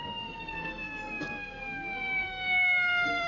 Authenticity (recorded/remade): remade